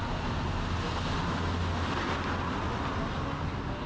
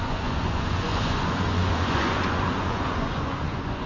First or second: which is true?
first